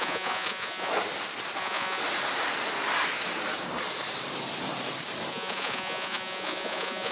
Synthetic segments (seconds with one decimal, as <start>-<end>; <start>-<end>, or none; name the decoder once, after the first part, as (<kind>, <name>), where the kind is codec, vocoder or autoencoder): 0.0-0.9 (vocoder, Vocos); 1.6-2.0; 5.3-7.1